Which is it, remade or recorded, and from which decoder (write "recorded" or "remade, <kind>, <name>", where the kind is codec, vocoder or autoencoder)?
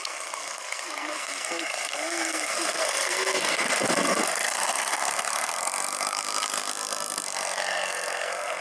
remade, codec, SNAC